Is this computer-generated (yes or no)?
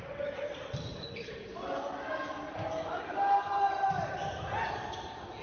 no